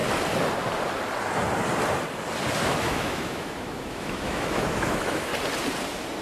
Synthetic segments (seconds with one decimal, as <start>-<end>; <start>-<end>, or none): 2.6-5.3